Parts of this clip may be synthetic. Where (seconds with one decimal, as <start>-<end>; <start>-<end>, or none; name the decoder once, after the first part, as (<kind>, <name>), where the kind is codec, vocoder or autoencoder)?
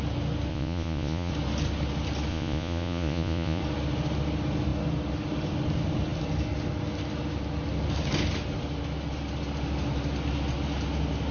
0.5-1.3 (vocoder, Vocos); 2.3-3.6